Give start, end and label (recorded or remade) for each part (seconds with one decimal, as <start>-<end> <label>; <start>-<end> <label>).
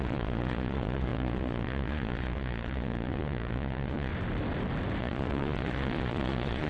0.0-4.1 remade; 4.1-5.0 recorded; 5.0-6.7 remade